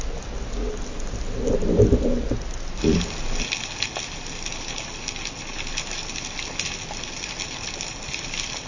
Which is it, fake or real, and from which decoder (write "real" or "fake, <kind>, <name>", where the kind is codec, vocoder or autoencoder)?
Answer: real